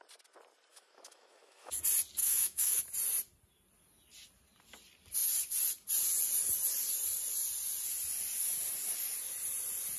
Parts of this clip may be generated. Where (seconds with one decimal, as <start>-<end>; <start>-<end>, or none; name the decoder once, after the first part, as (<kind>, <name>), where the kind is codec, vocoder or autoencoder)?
0.7-1.8 (autoencoder, DAC-VAE); 2.2-2.8

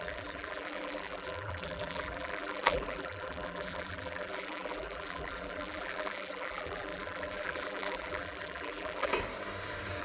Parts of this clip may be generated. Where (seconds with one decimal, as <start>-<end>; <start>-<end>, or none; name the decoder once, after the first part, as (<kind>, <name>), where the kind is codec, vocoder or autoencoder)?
0.0-9.1 (vocoder, BigVGAN v2)

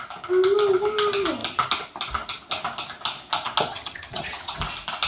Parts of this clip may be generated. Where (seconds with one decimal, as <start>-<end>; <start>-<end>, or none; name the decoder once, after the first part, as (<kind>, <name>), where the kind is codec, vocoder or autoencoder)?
3.7-4.6 (vocoder, HiFi-GAN)